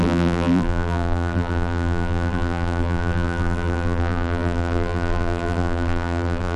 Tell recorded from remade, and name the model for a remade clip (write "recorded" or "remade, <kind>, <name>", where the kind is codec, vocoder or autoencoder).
remade, vocoder, BigVGAN v2